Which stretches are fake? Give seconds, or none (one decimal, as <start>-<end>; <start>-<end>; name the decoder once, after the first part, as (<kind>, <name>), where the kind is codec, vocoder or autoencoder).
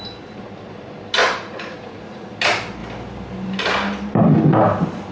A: 1.2-2.3 (vocoder, Vocos)